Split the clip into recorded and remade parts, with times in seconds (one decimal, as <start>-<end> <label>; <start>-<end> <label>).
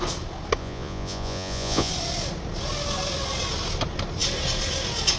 0.0-0.6 recorded; 0.6-1.9 remade; 1.9-5.2 recorded